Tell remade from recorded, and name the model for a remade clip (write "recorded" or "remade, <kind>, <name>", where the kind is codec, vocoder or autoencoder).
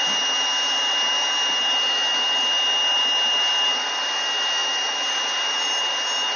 recorded